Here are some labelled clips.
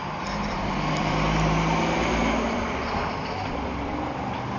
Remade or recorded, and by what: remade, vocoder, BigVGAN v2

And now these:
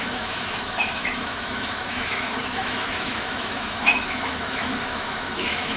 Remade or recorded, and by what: remade, autoencoder, DAC-VAE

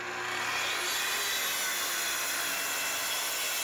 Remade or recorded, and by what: recorded